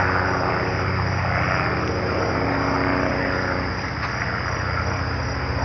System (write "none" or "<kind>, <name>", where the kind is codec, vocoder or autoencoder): none